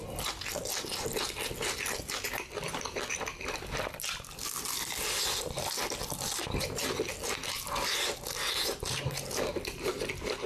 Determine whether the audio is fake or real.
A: real